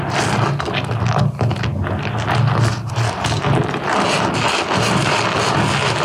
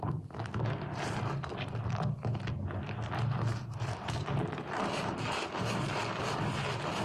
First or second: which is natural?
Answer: first